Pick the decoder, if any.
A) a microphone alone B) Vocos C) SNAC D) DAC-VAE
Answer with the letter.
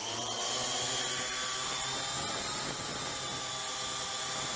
A